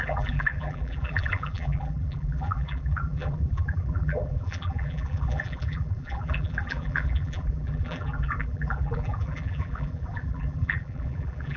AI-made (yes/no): yes